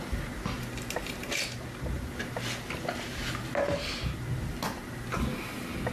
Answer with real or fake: real